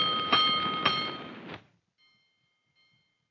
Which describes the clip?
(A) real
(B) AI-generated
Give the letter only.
A